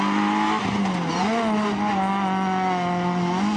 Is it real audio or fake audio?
real